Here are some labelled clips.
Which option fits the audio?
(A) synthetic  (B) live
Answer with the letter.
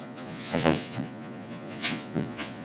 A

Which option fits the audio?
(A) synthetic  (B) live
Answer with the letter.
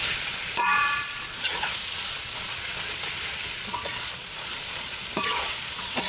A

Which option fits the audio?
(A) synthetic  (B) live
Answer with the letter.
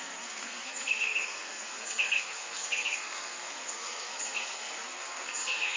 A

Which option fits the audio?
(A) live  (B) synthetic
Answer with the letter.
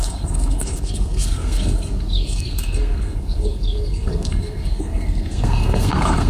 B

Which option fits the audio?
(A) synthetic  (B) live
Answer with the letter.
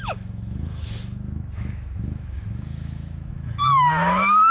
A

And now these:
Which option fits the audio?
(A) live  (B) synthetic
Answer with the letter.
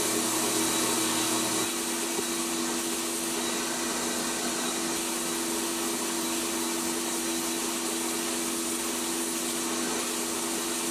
A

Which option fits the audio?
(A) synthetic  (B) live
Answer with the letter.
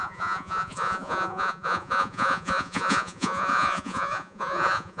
A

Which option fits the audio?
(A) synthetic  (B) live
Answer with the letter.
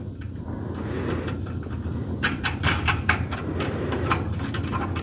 A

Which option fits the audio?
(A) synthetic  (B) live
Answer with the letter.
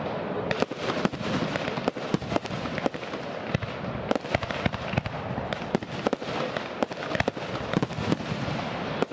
B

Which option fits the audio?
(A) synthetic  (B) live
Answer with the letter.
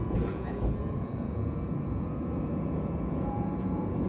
A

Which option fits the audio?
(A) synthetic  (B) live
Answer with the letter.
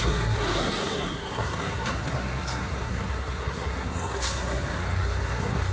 A